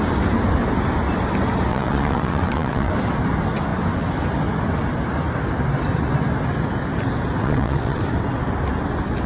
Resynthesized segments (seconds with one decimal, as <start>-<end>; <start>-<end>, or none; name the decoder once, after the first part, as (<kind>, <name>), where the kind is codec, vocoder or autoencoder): 1.7-2.9 (vocoder, WaveNeXt); 7.4-8.0